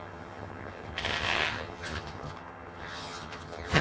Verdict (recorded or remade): remade